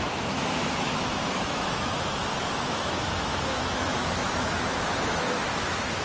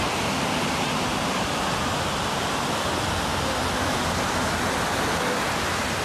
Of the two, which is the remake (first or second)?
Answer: first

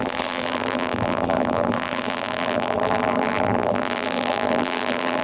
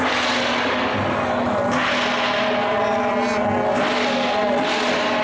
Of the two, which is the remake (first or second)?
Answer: first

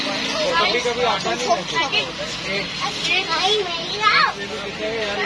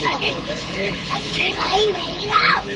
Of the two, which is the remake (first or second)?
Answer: second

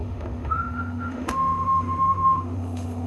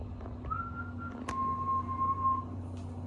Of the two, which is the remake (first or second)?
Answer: first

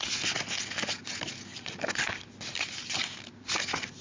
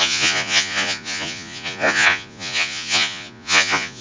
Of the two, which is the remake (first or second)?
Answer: second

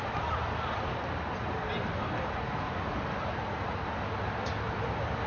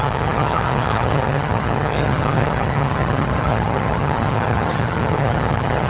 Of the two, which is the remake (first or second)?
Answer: second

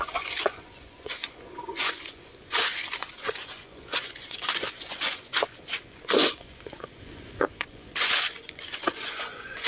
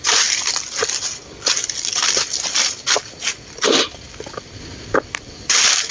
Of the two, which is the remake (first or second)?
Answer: first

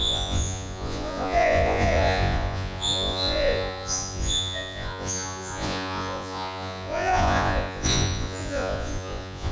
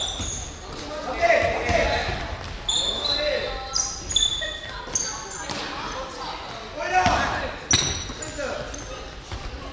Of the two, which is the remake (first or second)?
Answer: first